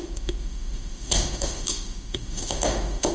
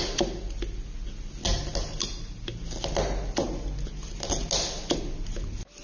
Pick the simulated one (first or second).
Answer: first